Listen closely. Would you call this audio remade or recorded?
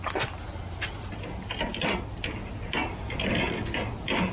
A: recorded